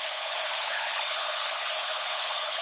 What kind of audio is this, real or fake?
fake